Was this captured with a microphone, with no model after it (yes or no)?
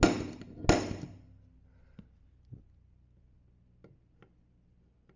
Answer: yes